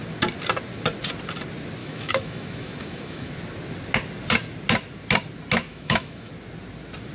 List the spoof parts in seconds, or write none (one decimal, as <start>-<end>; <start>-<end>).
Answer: 1.8-3.3; 5.7-6.3

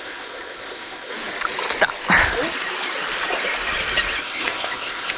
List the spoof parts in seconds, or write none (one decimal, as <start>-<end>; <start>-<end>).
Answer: 0.0-1.1; 4.2-5.2

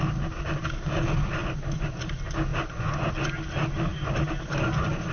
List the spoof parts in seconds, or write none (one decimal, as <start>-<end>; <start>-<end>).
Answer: none

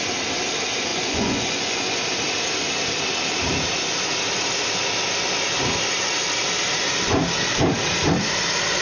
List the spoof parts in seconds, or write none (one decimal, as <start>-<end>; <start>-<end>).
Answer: 0.9-2.0

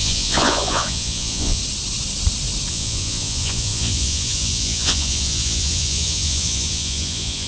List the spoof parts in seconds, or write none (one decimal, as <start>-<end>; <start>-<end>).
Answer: 0.0-1.6; 2.7-7.5

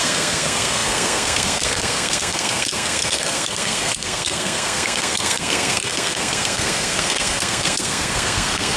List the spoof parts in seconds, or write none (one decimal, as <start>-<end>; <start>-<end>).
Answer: 0.0-8.8

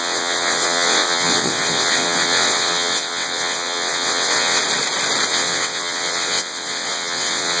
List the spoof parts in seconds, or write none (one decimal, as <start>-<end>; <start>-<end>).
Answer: 0.0-4.6; 5.3-7.6

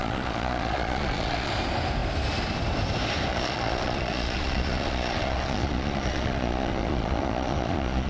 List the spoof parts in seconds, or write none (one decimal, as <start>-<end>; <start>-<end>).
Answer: 0.0-1.5; 3.3-8.1